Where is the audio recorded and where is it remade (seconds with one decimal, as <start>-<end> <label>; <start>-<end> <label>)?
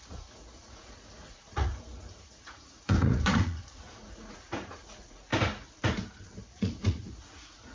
0.0-5.3 remade; 5.3-6.4 recorded; 6.4-7.7 remade